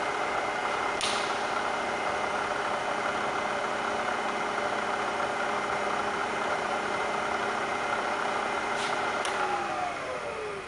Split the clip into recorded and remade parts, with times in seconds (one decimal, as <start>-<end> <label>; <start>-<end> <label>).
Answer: 0.0-6.2 recorded; 6.2-7.1 remade; 7.1-10.7 recorded

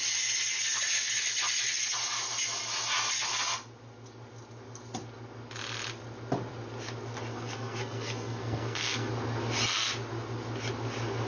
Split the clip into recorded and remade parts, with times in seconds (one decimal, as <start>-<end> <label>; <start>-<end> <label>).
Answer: 0.0-7.3 recorded; 7.3-9.1 remade; 9.1-11.3 recorded

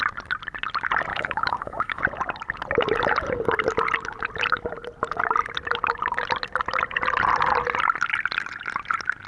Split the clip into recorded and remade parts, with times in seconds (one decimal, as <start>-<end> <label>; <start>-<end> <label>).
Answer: 0.0-1.1 recorded; 1.1-2.0 remade; 2.0-9.3 recorded

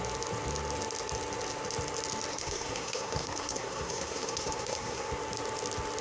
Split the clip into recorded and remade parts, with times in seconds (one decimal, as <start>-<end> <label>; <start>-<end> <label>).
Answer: 0.0-2.3 recorded; 2.3-5.1 remade; 5.1-6.0 recorded

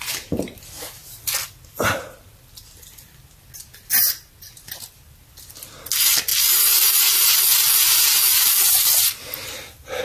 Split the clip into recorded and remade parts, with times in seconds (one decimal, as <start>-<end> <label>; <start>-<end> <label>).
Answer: 0.0-10.0 recorded

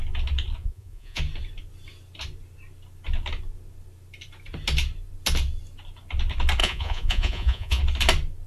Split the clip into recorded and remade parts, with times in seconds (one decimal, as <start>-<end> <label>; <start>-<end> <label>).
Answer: 0.0-0.6 recorded; 0.6-1.2 remade; 1.2-6.6 recorded; 6.6-7.8 remade; 7.8-8.5 recorded

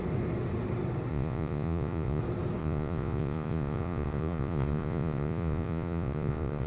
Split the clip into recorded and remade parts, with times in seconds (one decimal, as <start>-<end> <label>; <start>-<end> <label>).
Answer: 0.0-1.1 recorded; 1.1-2.2 remade; 2.2-2.6 recorded; 2.6-6.7 remade

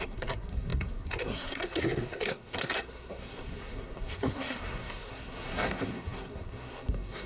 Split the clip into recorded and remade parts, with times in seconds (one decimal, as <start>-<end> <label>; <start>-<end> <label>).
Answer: 0.0-7.3 remade